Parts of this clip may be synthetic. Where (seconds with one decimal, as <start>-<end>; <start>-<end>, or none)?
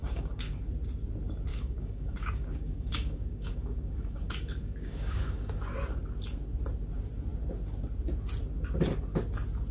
0.0-0.6; 1.5-5.5